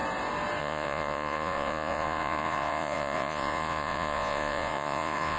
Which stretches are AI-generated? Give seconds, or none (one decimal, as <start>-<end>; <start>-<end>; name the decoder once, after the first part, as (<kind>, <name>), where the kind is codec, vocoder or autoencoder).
0.6-5.4 (vocoder, Vocos)